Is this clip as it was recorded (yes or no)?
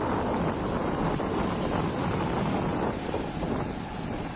yes